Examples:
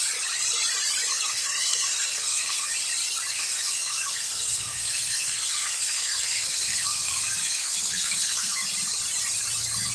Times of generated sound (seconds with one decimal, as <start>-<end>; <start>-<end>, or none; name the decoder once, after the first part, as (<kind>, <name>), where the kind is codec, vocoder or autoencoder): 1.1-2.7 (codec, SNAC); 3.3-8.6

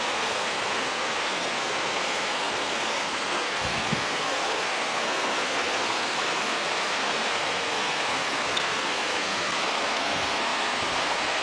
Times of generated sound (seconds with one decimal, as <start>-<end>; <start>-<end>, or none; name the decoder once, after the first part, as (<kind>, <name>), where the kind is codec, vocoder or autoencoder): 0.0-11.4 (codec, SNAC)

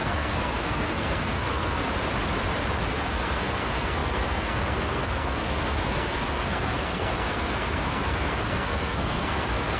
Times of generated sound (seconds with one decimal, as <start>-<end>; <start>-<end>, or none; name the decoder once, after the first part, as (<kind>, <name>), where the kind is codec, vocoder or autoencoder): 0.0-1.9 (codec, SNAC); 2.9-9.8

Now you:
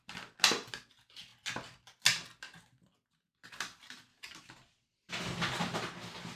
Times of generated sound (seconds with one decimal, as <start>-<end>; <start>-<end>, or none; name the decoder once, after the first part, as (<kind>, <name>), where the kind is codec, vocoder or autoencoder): none

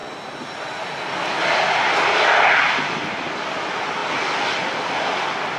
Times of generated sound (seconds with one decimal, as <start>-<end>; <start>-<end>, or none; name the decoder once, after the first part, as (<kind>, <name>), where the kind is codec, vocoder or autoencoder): none

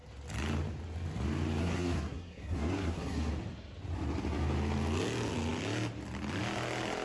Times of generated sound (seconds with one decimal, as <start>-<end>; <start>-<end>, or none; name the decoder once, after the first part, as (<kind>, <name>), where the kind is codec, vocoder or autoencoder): 1.6-3.3 (codec, SNAC)